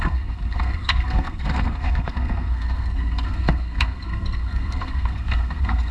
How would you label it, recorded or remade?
remade